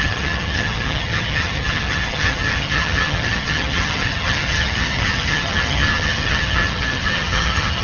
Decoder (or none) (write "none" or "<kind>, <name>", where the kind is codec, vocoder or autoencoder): vocoder, HiFi-GAN